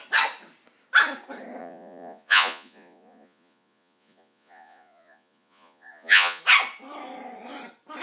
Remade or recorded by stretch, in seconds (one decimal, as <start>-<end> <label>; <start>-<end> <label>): 0.0-1.6 recorded; 1.6-6.4 remade; 6.4-8.0 recorded